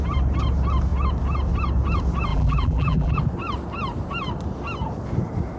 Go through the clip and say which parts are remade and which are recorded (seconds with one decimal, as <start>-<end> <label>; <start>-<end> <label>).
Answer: 0.0-2.3 recorded; 2.3-3.2 remade; 3.2-5.6 recorded